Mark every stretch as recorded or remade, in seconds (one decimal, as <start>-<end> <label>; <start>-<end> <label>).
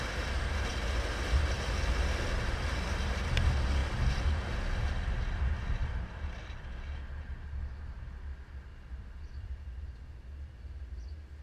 0.0-3.8 recorded; 3.8-4.4 remade; 4.4-5.8 recorded; 5.8-6.7 remade; 6.7-8.7 recorded; 8.7-9.6 remade; 9.6-11.4 recorded